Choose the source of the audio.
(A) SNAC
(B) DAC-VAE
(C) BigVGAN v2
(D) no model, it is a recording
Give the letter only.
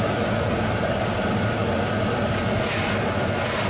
C